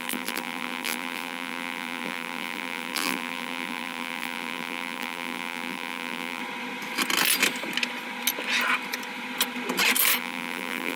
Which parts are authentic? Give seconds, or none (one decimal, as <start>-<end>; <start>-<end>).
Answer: 6.4-10.2